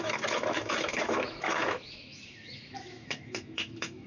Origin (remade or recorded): remade